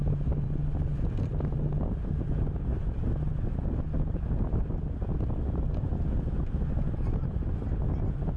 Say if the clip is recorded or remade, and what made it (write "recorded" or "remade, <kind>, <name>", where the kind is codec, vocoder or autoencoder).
recorded